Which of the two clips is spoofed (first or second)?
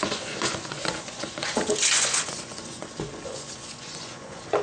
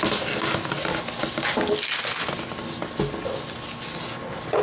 first